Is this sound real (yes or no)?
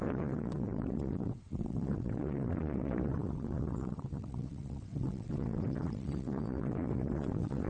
no